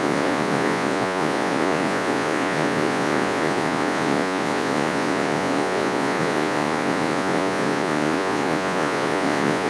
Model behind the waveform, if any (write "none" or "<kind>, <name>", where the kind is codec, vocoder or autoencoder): vocoder, Vocos